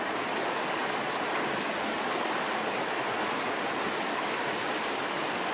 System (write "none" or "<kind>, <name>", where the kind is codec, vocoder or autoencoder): none